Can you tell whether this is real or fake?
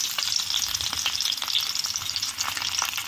fake